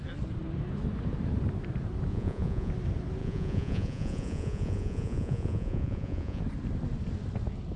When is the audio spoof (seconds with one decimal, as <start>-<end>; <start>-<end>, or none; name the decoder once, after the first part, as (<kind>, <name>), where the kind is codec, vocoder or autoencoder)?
2.1-2.7 (vocoder, Vocos); 3.2-6.4